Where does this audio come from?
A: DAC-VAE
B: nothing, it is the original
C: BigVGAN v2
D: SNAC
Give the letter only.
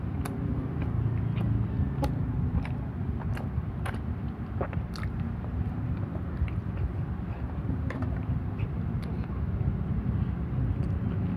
B